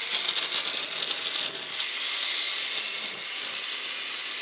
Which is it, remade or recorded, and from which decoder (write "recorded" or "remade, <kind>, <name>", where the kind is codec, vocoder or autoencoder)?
recorded